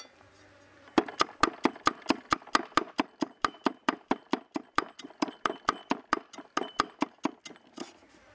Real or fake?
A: real